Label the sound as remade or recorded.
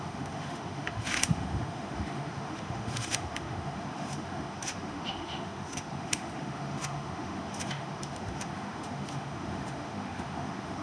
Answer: remade